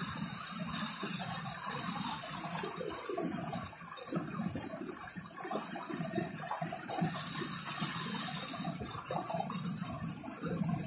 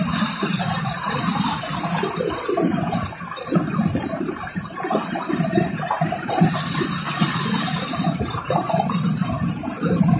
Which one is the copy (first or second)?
second